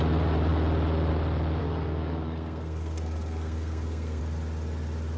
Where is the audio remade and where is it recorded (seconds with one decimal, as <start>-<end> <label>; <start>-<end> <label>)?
0.0-1.6 recorded; 1.6-4.2 remade; 4.2-5.2 recorded